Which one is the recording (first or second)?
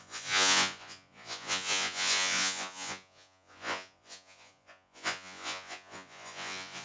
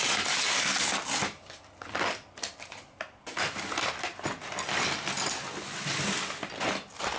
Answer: second